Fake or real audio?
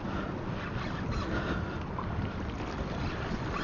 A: real